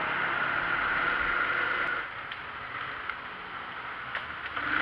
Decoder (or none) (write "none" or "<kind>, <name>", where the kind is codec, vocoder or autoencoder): none